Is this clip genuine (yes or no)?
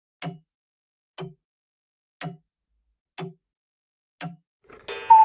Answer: yes